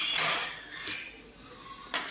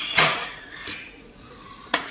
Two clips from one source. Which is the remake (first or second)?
second